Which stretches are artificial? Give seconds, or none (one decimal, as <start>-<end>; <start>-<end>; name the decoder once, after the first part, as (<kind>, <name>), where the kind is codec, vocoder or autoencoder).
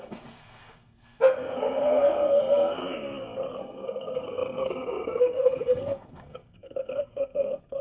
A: 0.0-2.8 (codec, SNAC); 3.6-7.8